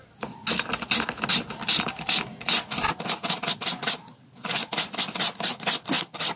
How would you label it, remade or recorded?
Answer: recorded